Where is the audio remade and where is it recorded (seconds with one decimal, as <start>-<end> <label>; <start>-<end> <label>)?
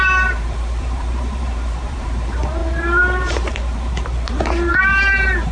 0.0-5.5 remade